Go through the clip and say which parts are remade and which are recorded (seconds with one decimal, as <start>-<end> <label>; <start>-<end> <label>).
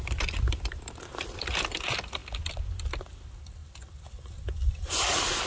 0.0-5.5 recorded